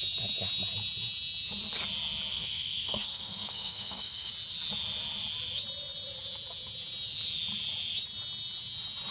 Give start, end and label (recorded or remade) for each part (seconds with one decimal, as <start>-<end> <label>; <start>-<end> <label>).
0.0-2.3 recorded; 2.3-4.3 remade; 4.3-9.1 recorded